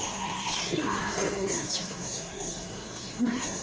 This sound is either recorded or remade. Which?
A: remade